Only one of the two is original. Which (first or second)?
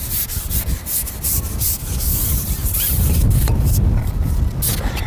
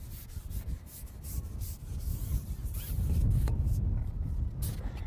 second